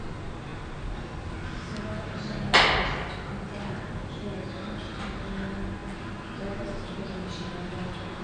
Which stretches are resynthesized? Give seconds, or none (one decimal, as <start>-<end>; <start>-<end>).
none